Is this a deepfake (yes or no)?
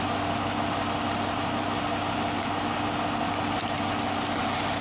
no